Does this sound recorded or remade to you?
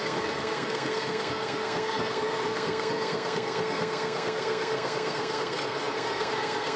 remade